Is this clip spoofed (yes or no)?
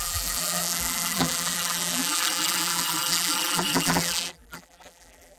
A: yes